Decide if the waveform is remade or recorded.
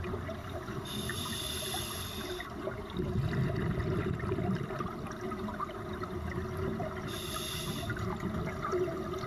recorded